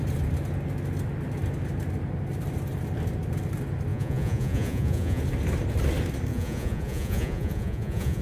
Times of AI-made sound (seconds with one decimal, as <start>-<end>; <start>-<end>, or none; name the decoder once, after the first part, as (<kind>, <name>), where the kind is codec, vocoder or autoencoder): 3.9-5.2 (vocoder, Vocos); 6.3-8.2